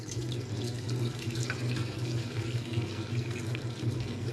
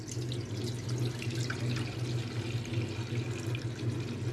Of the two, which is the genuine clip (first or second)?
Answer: second